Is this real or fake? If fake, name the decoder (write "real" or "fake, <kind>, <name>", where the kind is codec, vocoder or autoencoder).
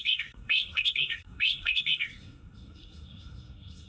fake, codec, SNAC